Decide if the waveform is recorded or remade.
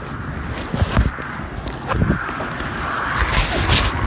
recorded